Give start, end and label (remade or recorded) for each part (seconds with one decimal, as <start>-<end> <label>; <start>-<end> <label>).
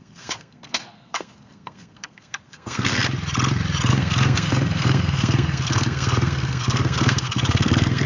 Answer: 0.0-3.0 remade; 3.0-3.9 recorded; 3.9-8.1 remade